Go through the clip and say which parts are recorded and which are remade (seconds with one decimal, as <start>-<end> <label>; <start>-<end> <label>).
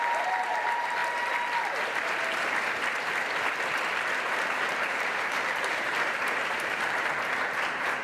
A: 0.0-1.0 remade; 1.0-4.3 recorded; 4.3-8.0 remade